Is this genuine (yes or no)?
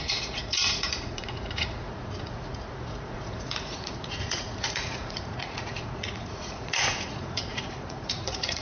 no